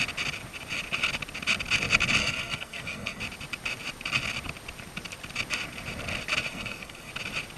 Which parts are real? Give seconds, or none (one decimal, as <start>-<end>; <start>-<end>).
0.0-2.2; 3.2-6.5; 7.1-7.6